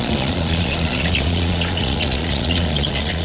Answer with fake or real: fake